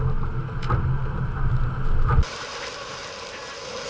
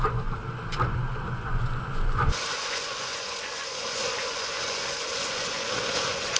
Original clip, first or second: first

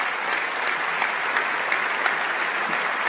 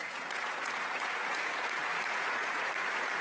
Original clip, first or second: first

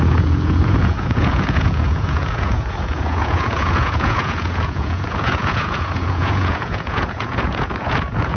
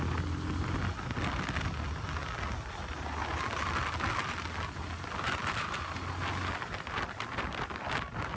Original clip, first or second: second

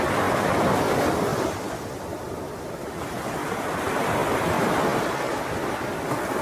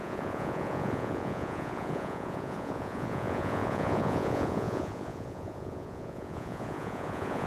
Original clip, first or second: first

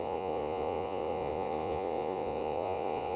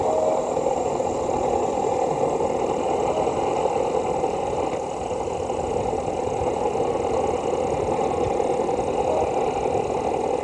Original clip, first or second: second